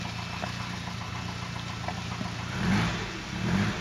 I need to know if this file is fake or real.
real